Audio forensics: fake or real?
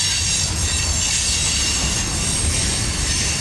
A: real